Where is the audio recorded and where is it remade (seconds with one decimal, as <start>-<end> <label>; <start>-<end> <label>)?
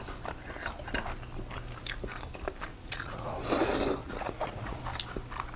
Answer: 0.0-2.7 recorded; 2.7-3.3 remade; 3.3-4.0 recorded; 4.0-4.8 remade; 4.8-5.6 recorded